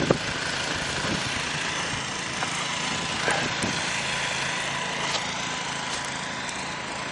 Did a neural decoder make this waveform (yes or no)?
no